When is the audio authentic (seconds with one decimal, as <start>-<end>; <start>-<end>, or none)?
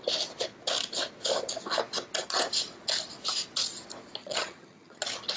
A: 0.0-4.2; 5.0-5.4